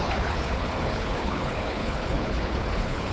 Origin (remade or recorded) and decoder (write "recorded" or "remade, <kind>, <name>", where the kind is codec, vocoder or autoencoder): remade, codec, HILCodec